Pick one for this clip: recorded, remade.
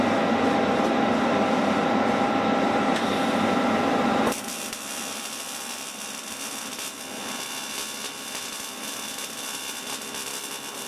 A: remade